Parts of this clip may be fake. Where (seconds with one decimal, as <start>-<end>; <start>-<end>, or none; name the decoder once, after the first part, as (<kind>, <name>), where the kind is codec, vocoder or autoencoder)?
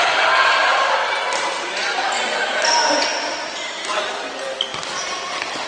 4.7-5.7 (vocoder, BigVGAN v2)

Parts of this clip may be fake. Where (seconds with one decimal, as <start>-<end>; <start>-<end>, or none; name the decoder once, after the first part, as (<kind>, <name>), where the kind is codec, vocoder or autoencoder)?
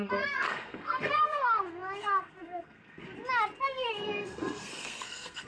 0.0-3.0 (codec, SNAC); 3.6-5.5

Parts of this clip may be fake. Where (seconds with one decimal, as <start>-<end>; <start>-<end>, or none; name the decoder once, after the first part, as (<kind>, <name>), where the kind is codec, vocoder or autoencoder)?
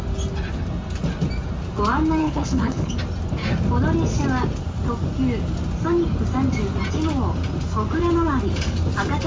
2.2-2.9 (codec, HILCodec)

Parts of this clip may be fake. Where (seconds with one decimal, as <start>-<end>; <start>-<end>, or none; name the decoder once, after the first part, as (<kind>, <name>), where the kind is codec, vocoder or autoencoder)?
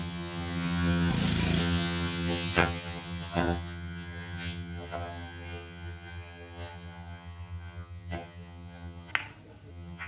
0.0-1.1 (vocoder, HiFi-GAN); 1.6-9.1; 9.7-10.1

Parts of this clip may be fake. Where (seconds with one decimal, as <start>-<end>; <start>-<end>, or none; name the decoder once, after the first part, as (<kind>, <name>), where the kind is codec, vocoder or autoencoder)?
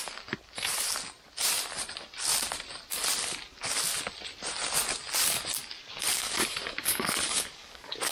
6.1-8.1 (codec, DAC)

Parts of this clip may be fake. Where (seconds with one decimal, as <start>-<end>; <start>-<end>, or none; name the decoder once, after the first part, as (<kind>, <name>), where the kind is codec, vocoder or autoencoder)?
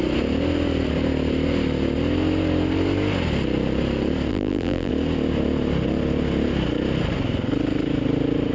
4.3-4.9 (vocoder, BigVGAN v2)